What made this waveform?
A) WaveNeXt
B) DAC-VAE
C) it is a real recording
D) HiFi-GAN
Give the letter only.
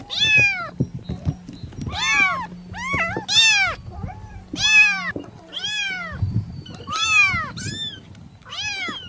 C